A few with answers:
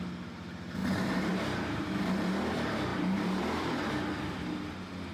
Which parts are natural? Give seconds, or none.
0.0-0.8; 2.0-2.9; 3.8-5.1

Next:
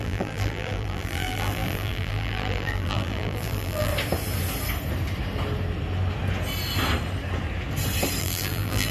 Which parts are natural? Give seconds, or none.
3.9-8.2